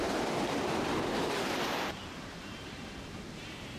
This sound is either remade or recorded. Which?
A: remade